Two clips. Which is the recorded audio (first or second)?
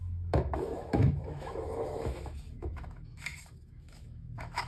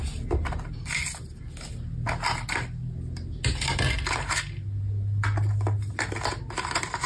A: second